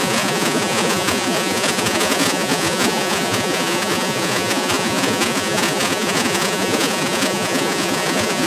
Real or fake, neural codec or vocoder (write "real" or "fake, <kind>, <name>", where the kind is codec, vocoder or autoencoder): fake, vocoder, Vocos